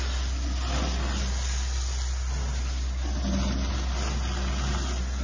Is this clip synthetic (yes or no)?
no